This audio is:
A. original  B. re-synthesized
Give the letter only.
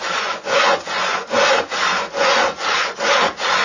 B